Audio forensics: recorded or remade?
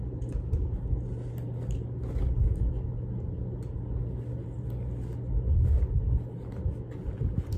recorded